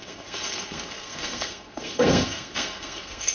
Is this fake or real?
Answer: fake